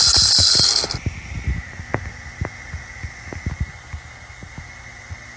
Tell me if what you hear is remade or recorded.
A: recorded